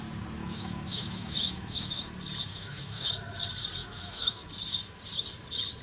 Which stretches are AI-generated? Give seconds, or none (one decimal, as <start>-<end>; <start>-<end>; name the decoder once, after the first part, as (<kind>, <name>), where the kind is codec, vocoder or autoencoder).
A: 0.4-2.1 (autoencoder, DAC-VAE); 2.5-3.1; 3.8-4.5